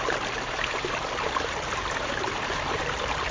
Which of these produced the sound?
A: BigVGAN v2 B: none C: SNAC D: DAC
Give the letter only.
A